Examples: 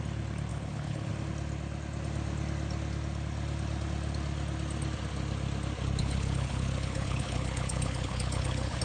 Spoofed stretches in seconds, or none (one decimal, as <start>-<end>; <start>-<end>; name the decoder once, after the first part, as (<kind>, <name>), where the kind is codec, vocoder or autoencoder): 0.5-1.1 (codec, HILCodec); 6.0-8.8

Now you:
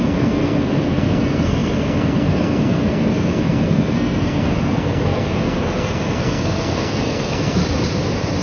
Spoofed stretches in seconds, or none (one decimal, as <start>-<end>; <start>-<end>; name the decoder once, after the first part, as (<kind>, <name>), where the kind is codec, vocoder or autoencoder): 0.0-7.6 (codec, SNAC)

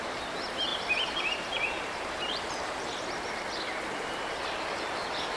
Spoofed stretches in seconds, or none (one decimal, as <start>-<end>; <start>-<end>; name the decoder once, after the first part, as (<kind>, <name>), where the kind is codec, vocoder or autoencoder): 0.7-3.4 (vocoder, BigVGAN v2)

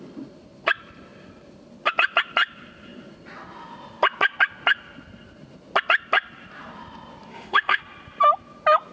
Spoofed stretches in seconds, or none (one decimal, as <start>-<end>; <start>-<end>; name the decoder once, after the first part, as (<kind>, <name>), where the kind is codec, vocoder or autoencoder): 7.3-7.8 (autoencoder, DAC-VAE)

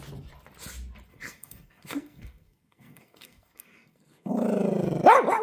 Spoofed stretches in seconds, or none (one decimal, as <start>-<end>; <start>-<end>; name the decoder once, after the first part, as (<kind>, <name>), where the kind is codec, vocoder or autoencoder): 1.1-4.3 (codec, SNAC)

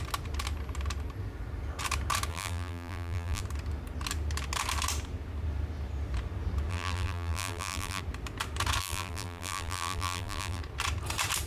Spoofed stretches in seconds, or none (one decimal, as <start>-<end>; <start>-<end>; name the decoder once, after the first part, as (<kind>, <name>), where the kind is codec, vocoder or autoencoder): 2.3-3.4 (vocoder, BigVGAN v2); 6.7-8.0; 8.8-10.6

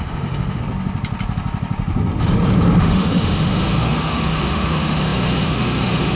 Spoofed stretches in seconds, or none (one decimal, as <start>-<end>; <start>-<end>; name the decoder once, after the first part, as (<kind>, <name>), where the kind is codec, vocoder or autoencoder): 0.0-0.6 (autoencoder, DAC-VAE); 2.8-6.2

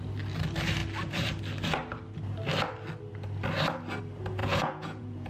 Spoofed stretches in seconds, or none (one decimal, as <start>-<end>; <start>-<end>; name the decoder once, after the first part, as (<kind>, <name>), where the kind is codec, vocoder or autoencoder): 4.4-5.3 (vocoder, Vocos)